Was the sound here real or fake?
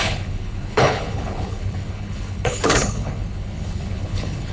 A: fake